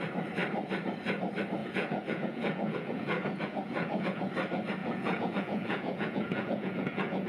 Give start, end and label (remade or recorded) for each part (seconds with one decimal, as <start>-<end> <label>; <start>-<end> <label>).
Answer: 0.0-1.6 recorded; 1.6-4.3 remade; 4.3-4.8 recorded; 4.8-7.3 remade